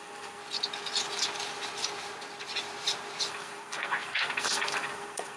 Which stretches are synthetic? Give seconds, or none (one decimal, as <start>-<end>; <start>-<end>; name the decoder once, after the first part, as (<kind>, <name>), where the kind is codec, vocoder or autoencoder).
0.0-0.4 (codec, SNAC); 3.3-5.4